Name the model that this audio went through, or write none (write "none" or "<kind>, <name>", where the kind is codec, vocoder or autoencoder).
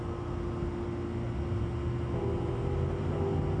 none